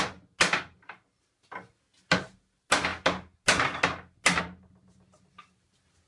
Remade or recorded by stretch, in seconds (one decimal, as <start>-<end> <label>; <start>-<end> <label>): 0.0-6.1 recorded